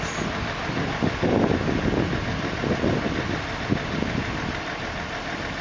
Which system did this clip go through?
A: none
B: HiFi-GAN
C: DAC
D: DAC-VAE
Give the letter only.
A